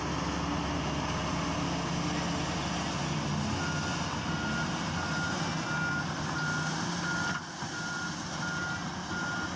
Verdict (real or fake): real